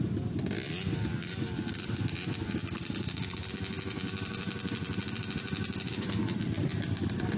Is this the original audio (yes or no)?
no